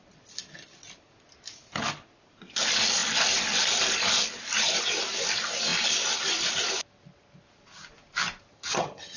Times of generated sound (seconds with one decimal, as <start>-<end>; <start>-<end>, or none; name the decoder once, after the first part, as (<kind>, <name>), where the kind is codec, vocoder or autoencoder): 8.5-9.2 (vocoder, HiFi-GAN)